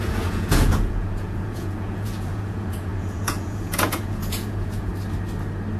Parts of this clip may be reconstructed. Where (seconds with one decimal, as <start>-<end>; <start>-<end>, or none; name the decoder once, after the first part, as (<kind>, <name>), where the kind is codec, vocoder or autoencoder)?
0.0-4.9 (vocoder, Vocos)